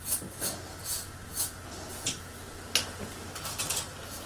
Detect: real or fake real